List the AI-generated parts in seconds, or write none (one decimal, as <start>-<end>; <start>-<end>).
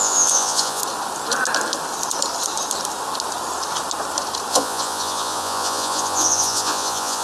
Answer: 0.0-0.8; 4.5-7.2